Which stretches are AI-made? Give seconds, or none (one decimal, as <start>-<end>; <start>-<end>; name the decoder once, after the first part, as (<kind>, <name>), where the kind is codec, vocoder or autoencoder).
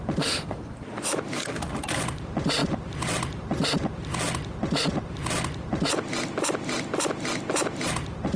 none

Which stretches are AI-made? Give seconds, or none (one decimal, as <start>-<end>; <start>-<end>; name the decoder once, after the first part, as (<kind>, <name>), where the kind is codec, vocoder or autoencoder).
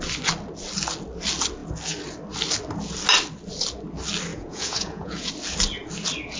4.3-5.3 (vocoder, Vocos)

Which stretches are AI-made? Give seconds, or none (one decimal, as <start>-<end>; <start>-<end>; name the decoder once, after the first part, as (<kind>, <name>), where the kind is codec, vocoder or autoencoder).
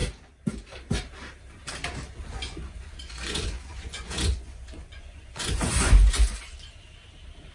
2.2-6.7 (vocoder, Vocos)